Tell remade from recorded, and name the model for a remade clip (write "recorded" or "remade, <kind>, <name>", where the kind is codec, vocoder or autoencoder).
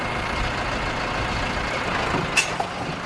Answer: recorded